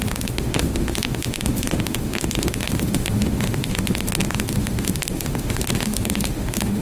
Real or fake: fake